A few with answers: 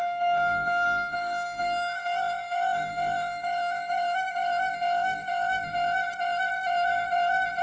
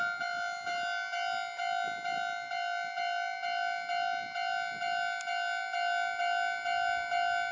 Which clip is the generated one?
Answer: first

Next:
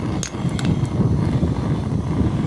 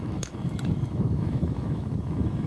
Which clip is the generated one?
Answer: second